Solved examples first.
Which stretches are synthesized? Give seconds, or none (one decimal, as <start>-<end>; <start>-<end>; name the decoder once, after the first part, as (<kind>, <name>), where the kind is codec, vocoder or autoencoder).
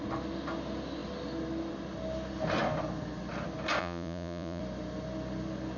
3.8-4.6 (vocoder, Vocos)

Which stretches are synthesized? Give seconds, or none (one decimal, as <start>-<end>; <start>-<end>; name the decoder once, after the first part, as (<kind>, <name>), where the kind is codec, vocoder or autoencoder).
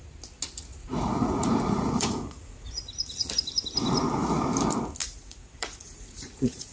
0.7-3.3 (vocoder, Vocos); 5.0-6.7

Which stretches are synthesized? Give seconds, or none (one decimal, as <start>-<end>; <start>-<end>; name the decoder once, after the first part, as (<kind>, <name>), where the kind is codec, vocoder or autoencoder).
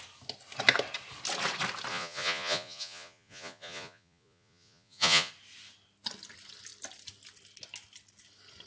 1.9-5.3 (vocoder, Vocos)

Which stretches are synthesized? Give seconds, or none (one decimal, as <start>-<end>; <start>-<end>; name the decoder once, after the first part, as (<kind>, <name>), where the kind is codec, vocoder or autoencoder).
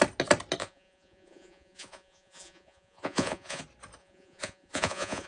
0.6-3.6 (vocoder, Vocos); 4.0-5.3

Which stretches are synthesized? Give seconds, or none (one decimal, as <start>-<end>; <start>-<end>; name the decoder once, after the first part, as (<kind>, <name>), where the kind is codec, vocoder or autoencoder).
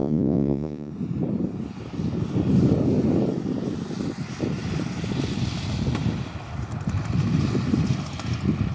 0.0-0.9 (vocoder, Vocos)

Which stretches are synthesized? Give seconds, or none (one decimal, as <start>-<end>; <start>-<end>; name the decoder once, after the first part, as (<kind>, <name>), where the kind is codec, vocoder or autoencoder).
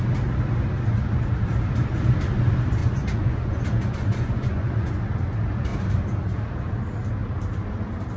2.8-4.9 (vocoder, Vocos)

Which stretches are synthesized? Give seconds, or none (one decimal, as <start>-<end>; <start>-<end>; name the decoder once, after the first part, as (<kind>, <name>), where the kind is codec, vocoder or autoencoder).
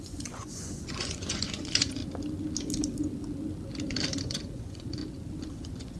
0.0-2.0 (vocoder, Vocos); 4.1-5.0; 5.5-6.0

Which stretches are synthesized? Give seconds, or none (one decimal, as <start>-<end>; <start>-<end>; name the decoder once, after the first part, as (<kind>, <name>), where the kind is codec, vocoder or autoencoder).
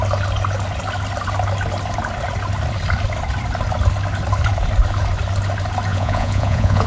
5.9-6.9 (vocoder, Vocos)